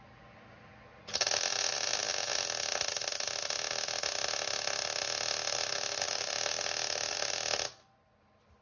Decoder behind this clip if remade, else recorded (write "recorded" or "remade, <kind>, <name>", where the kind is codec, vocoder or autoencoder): recorded